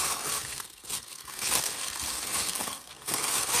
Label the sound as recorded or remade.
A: remade